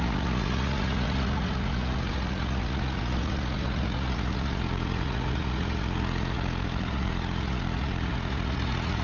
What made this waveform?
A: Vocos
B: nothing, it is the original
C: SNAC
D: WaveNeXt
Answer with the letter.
A